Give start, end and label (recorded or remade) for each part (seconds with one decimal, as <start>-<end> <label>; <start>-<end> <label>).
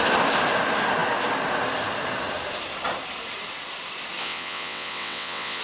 0.0-4.2 recorded; 4.2-5.6 remade